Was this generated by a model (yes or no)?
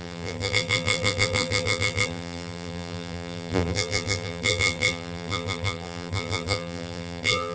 yes